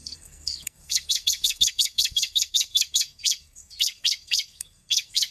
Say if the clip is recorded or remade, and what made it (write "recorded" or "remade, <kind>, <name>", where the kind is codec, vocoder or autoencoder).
remade, codec, SNAC